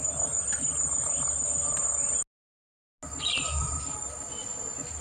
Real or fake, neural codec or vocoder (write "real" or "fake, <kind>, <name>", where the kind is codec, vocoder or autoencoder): real